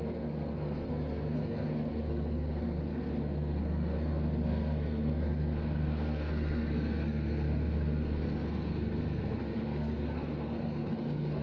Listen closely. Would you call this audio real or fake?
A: fake